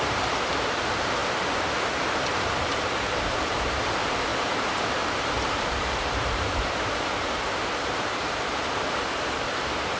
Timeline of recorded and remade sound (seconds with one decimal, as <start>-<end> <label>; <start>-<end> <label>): 0.0-1.2 remade; 1.2-2.5 recorded; 2.5-10.0 remade